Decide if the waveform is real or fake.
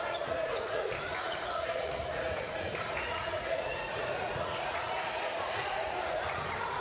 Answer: fake